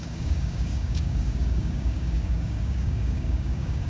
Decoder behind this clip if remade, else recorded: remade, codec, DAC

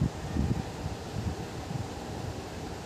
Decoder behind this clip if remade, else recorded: recorded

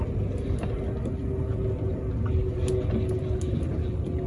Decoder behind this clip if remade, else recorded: recorded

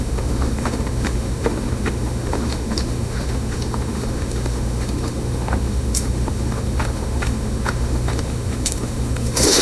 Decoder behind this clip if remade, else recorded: remade, autoencoder, DAC-VAE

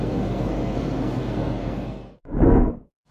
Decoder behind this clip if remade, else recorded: remade, codec, SNAC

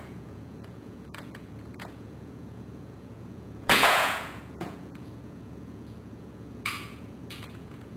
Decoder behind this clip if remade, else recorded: remade, vocoder, Vocos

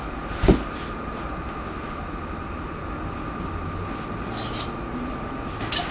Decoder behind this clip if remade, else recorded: recorded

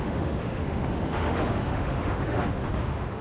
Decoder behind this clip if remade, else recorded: remade, autoencoder, DAC-VAE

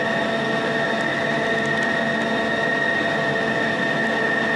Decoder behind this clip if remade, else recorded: recorded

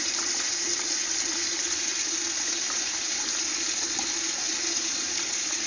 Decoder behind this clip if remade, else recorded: remade, vocoder, BigVGAN v2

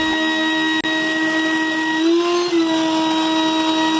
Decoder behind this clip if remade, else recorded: recorded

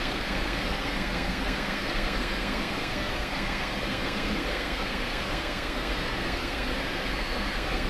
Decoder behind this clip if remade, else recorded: remade, codec, SNAC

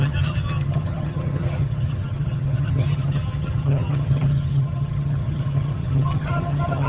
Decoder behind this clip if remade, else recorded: remade, vocoder, HiFi-GAN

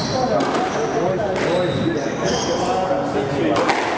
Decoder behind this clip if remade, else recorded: recorded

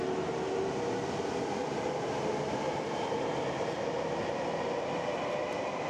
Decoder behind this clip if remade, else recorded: recorded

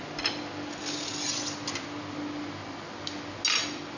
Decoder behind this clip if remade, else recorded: recorded